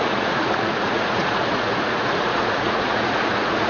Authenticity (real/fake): fake